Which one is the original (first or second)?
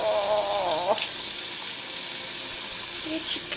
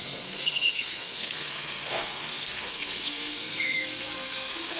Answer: first